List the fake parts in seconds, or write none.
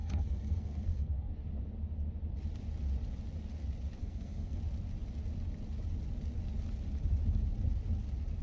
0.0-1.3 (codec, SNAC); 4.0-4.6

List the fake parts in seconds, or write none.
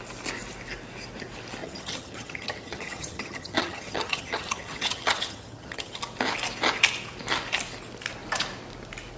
1.6-6.0 (vocoder, HiFi-GAN)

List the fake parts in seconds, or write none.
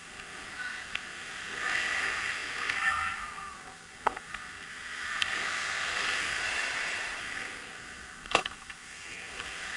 0.0-6.4 (codec, SNAC); 7.2-9.8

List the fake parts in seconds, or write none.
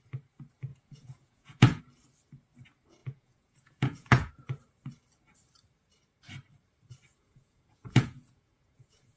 0.7-1.8 (vocoder, Vocos); 3.0-4.3; 7.1-9.2